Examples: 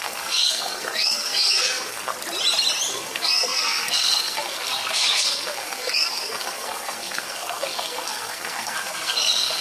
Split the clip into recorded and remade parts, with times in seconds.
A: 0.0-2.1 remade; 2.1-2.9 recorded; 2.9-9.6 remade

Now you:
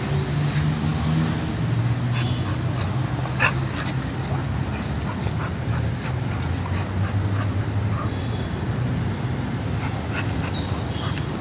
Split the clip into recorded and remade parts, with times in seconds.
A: 0.0-11.4 recorded

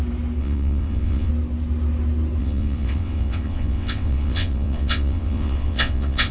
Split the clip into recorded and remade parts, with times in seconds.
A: 0.0-0.4 recorded; 0.4-1.3 remade; 1.3-2.4 recorded; 2.4-6.3 remade

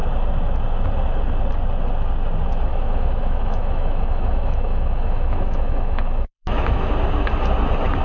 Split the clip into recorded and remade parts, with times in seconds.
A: 0.0-2.7 recorded; 2.7-6.9 remade; 6.9-8.0 recorded